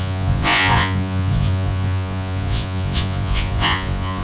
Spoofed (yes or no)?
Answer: yes